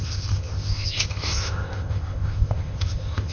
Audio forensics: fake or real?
fake